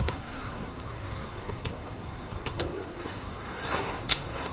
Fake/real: fake